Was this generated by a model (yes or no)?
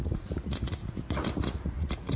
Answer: yes